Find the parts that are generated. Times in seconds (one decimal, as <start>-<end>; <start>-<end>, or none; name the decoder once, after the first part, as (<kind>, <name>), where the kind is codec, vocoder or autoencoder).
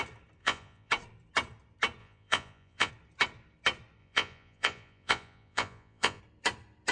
0.4-0.9 (vocoder, Vocos); 2.0-2.9; 4.0-6.2